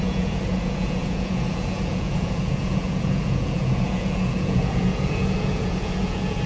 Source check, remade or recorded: remade